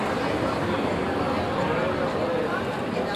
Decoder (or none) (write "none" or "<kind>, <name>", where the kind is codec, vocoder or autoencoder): none